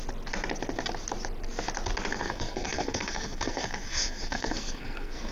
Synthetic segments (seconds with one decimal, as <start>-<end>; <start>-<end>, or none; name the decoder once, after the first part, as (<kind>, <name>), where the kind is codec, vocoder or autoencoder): 2.1-5.3 (codec, SNAC)